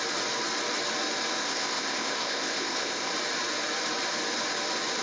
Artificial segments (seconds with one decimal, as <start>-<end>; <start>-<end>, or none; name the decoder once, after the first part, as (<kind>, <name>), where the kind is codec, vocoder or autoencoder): 1.4-3.1 (codec, ZipCodec)